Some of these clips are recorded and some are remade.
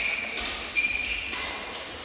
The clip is recorded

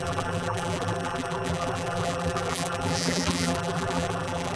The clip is remade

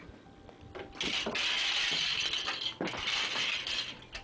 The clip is recorded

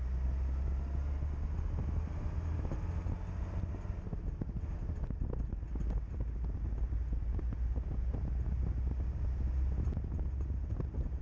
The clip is recorded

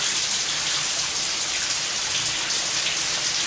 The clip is recorded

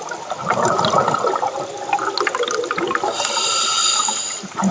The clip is recorded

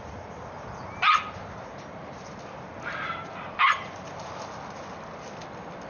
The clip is recorded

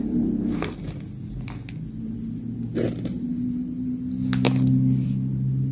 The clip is recorded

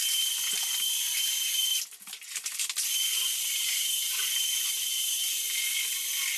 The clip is recorded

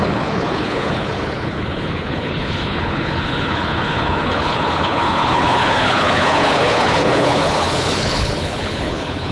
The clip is remade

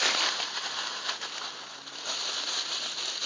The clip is recorded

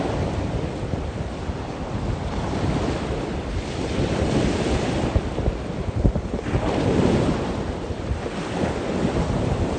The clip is recorded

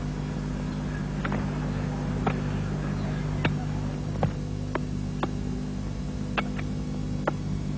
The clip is recorded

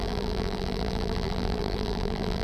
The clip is remade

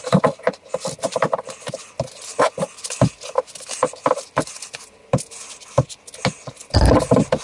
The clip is recorded